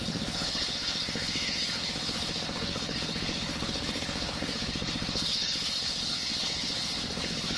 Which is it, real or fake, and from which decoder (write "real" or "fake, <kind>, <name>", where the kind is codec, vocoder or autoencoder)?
fake, codec, HILCodec